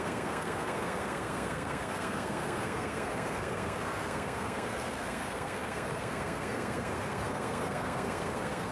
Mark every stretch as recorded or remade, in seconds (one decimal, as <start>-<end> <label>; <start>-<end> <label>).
0.0-8.7 remade